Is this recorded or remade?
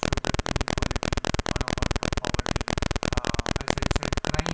recorded